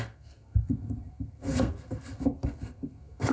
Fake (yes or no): yes